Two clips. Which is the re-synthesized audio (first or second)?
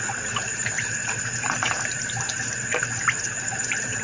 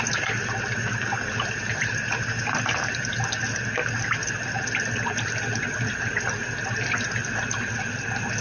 first